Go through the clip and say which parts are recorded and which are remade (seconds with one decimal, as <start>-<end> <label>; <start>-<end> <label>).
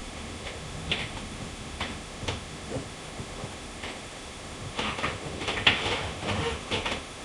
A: 0.0-7.2 remade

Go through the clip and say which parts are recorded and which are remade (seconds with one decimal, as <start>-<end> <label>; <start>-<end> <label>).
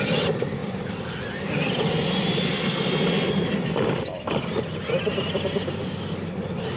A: 0.0-6.8 recorded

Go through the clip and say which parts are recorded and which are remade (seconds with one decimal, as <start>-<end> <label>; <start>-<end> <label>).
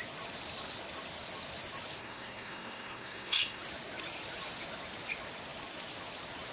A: 0.0-2.0 recorded; 2.0-3.6 remade; 3.6-6.5 recorded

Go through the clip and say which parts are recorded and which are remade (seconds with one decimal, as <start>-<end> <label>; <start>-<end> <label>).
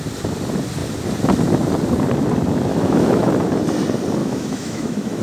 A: 0.0-2.7 recorded; 2.7-3.3 remade; 3.3-4.2 recorded; 4.2-5.2 remade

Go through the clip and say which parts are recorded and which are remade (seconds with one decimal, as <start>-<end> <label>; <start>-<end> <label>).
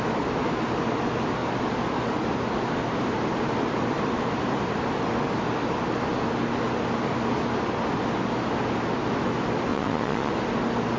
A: 0.0-9.7 recorded; 9.7-10.3 remade; 10.3-11.0 recorded